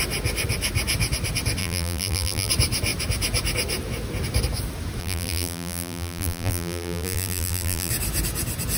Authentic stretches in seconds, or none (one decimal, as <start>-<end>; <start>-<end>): 0.0-1.6; 2.5-5.0; 7.9-8.8

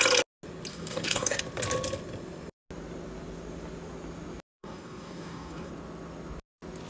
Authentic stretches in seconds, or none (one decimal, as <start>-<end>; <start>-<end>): 0.0-0.7; 1.4-4.5; 5.7-6.9

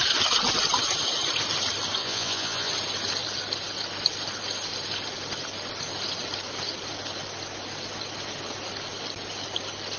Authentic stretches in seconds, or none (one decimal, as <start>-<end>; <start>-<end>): 0.0-2.0; 2.7-10.0

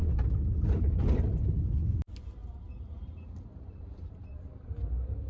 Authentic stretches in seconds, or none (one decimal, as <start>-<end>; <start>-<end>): 0.0-2.4; 4.5-5.3

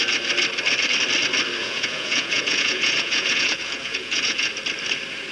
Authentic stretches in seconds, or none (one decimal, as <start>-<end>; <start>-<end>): 0.0-1.6; 4.5-5.3

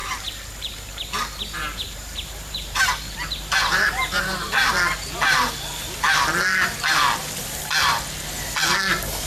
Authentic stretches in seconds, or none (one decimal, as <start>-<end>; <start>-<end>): 4.7-9.3

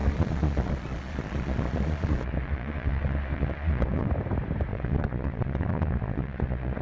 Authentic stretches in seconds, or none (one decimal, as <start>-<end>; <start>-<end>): 4.1-4.7

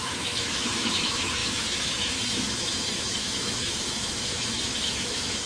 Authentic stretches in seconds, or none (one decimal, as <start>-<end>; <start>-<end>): none